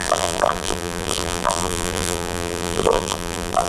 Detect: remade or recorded remade